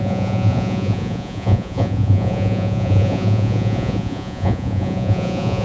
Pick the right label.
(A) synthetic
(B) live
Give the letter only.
A